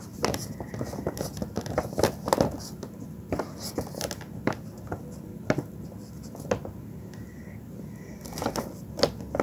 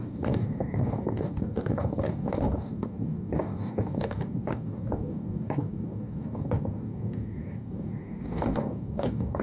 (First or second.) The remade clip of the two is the second